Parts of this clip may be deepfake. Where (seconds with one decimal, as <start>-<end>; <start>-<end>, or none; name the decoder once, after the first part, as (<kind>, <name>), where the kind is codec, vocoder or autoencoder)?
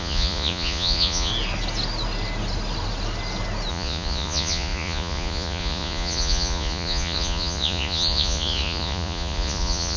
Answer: 0.0-1.3 (vocoder, Vocos); 3.7-10.0